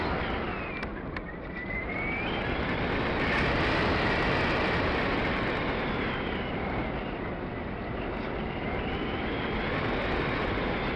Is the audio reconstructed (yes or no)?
no